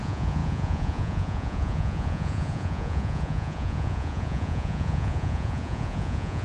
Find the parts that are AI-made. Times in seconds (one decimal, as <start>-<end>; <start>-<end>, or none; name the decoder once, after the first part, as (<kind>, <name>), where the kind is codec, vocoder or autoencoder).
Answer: 0.0-6.4 (vocoder, Vocos)

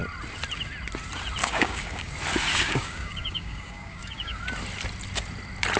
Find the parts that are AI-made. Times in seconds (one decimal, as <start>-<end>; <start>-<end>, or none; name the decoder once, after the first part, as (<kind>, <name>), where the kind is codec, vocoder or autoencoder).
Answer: 1.4-2.1 (codec, DAC); 2.5-4.4